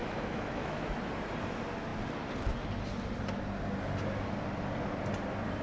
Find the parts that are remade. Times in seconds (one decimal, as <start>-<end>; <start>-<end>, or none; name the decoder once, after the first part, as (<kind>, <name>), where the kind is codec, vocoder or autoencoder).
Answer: 0.0-1.0 (autoencoder, DAC-VAE)